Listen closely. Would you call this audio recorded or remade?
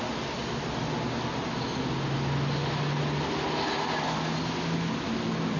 recorded